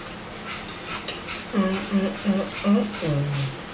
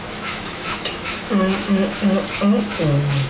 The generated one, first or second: second